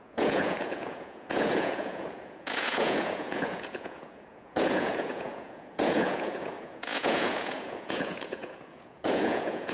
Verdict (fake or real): fake